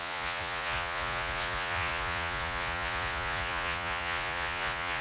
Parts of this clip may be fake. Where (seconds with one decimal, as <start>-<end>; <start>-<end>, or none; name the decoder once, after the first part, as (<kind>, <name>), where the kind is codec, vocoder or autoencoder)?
0.0-5.0 (vocoder, Vocos)